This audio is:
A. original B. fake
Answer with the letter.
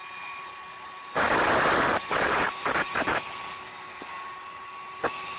A